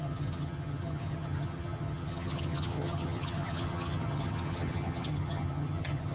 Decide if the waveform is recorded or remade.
remade